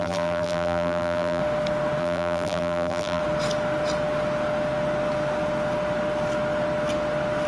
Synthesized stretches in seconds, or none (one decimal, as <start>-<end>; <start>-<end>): 0.0-1.4; 2.0-3.2

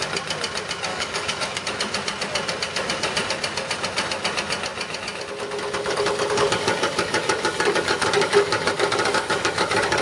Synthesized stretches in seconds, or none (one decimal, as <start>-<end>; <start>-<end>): 0.9-1.6; 5.8-10.0

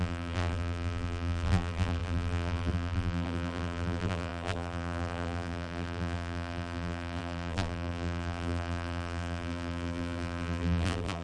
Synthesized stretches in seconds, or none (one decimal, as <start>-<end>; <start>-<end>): 0.0-11.2

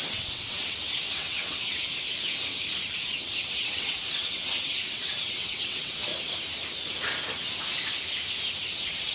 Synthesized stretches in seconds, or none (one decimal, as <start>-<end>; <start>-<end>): 0.0-1.9; 3.0-6.1; 8.7-9.1

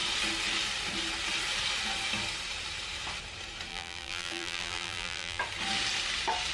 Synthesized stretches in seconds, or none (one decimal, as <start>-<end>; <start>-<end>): 3.7-5.4